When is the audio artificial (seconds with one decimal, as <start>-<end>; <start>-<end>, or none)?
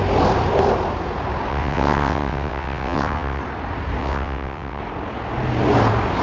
1.5-3.4; 4.0-4.8